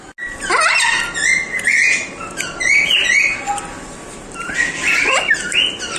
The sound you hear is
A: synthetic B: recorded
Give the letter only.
B